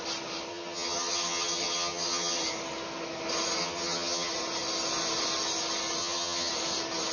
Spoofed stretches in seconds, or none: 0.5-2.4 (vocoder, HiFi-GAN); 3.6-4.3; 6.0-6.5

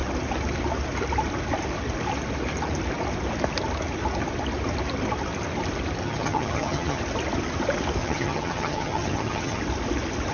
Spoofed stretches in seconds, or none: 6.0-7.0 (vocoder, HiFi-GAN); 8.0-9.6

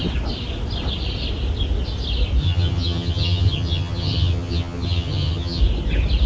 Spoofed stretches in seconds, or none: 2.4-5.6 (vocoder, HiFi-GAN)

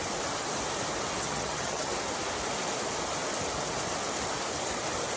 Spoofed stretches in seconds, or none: 1.2-1.9 (vocoder, HiFi-GAN)